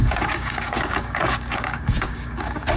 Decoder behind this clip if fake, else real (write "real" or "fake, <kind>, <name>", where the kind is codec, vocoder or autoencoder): fake, codec, DAC